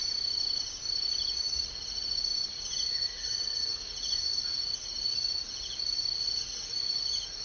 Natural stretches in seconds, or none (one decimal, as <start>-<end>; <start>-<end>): 0.0-1.3; 2.3-2.9

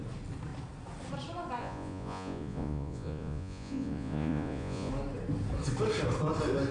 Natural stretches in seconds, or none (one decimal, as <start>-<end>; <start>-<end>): 0.0-1.6; 4.9-6.7

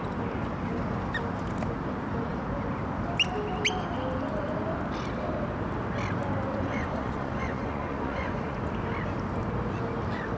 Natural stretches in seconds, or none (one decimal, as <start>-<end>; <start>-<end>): 0.0-6.5; 8.7-10.4

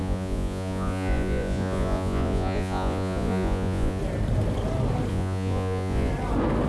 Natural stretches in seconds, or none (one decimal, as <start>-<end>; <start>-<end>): 4.0-5.1; 6.1-6.7

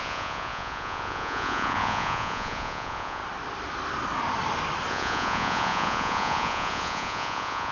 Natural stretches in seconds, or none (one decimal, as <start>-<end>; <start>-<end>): 3.2-4.9

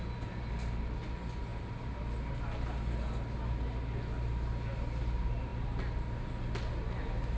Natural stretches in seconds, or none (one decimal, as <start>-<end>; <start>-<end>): 0.0-7.4

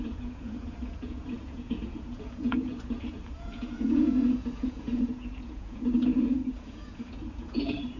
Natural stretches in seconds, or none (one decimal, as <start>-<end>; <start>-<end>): none